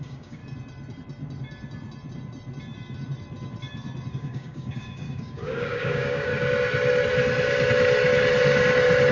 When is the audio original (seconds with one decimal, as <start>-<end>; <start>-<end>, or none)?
0.4-4.1; 6.3-9.1

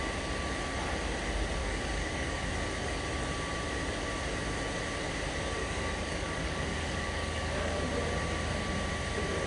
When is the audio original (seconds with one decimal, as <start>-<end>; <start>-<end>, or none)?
0.0-1.6; 2.5-5.6; 7.9-9.5

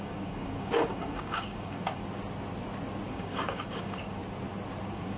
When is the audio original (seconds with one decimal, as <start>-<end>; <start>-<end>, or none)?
2.0-3.1; 4.2-4.8

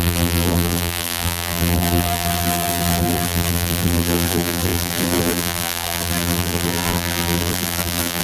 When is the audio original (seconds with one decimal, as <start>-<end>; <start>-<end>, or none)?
none

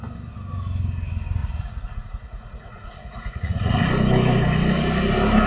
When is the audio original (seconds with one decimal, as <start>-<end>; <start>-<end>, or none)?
0.0-1.4; 3.9-5.5